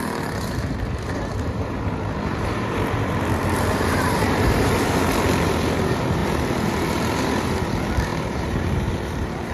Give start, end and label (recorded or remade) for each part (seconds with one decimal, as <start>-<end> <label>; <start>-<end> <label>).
0.0-2.3 recorded; 2.3-4.7 remade; 4.7-8.1 recorded; 8.1-8.9 remade; 8.9-9.5 recorded